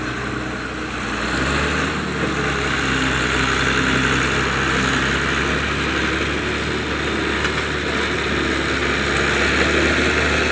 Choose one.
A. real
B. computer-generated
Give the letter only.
A